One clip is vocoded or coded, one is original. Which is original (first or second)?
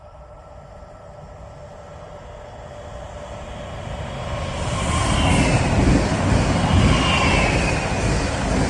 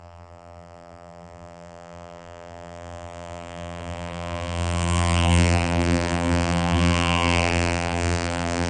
first